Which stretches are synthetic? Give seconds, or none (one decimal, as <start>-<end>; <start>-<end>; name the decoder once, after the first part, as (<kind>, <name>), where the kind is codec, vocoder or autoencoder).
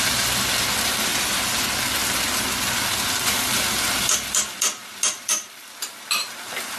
1.1-1.6 (vocoder, BigVGAN v2)